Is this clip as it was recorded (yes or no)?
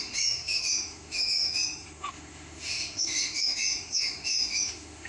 no